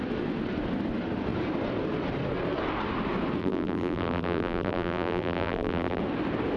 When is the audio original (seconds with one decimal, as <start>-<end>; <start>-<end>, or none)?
0.0-3.4; 6.0-6.6

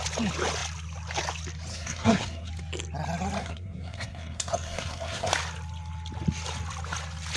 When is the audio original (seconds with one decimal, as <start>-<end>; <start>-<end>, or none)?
0.0-1.7; 2.5-3.4; 5.3-7.4

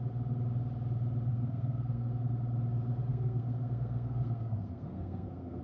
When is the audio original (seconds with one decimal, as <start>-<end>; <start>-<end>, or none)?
0.0-1.3; 2.3-3.1